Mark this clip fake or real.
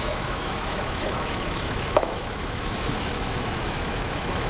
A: fake